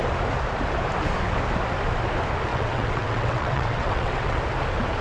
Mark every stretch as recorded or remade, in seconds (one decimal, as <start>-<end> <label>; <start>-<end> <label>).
0.0-2.5 recorded; 2.5-4.4 remade; 4.4-5.0 recorded